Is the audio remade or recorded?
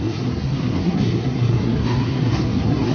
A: remade